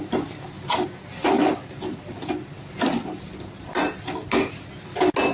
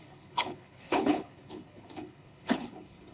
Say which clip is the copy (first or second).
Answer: second